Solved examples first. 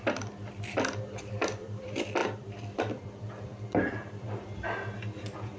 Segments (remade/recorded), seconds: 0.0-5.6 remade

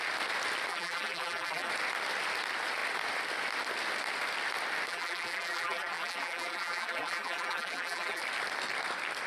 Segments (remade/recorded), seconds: 0.0-0.7 recorded; 0.7-1.7 remade; 1.7-4.9 recorded; 4.9-8.2 remade; 8.2-9.3 recorded